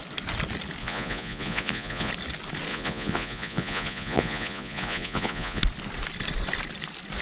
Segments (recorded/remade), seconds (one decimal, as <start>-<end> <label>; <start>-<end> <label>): 0.0-0.8 recorded; 0.8-2.1 remade; 2.1-2.7 recorded; 2.7-5.6 remade; 5.6-7.2 recorded